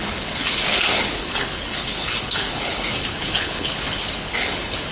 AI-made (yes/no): yes